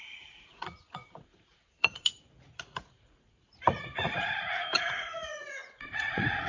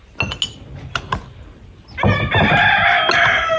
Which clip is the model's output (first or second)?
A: first